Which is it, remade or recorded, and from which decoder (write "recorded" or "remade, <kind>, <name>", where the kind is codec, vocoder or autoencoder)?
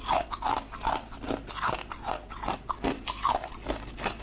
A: recorded